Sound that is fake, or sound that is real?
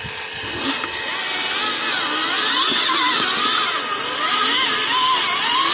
real